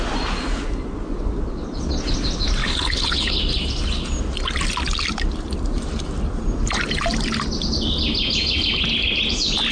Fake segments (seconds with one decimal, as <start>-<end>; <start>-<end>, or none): 2.6-3.4